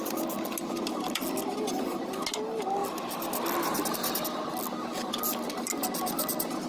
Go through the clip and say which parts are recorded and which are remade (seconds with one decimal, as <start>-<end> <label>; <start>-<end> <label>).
0.0-6.7 recorded